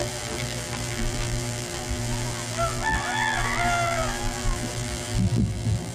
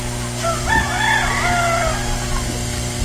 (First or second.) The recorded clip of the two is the second